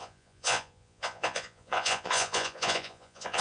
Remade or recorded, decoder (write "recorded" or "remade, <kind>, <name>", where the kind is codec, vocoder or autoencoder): remade, vocoder, Vocos